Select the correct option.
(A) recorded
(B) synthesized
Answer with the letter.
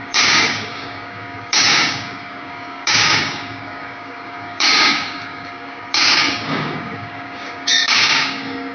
B